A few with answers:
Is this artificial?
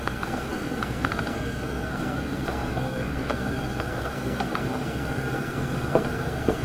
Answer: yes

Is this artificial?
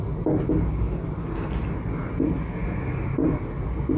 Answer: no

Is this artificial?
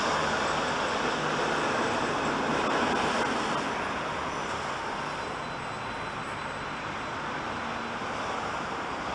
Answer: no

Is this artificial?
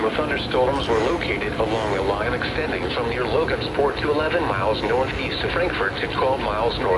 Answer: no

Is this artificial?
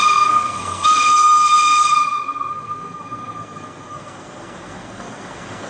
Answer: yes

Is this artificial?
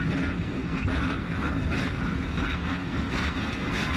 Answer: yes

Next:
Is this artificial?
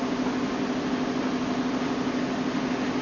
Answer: no